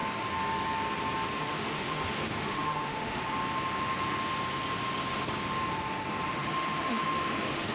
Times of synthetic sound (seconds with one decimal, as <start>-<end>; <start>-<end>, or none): 1.4-3.2; 6.3-7.7